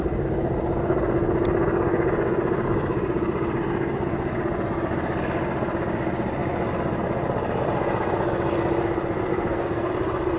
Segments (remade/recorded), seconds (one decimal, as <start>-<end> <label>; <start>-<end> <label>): 0.0-9.3 recorded; 9.3-9.9 remade; 9.9-10.4 recorded